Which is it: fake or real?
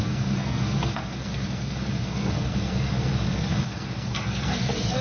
fake